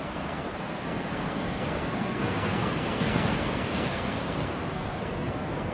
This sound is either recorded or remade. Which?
remade